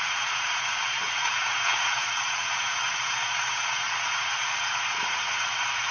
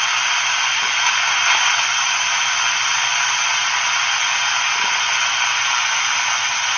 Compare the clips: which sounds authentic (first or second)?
second